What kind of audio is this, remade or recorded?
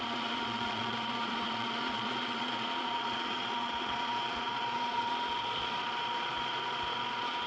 remade